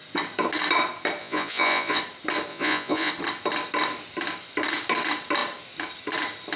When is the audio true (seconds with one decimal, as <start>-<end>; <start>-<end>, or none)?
0.0-1.2; 2.0-2.5; 3.1-6.6